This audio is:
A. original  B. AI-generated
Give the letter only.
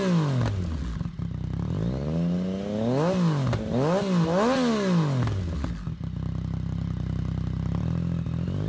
A